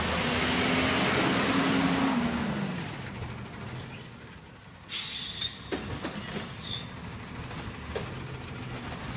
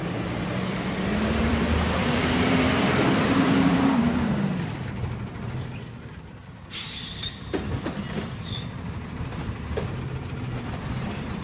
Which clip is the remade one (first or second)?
second